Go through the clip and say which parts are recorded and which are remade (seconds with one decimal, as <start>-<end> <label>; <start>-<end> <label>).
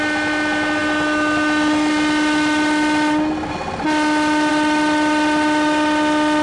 0.0-6.4 recorded